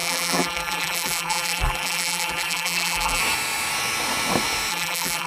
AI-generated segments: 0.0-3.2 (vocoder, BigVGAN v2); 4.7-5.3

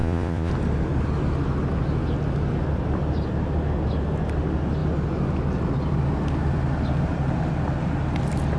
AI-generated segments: 0.0-0.5 (vocoder, Vocos)